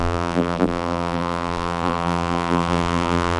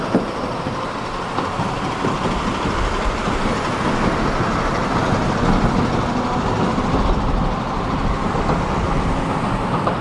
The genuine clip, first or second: second